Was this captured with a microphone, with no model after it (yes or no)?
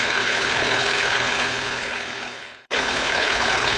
no